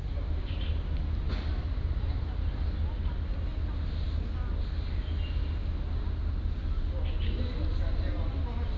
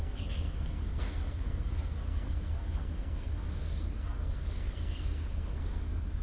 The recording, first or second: first